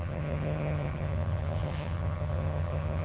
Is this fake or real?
fake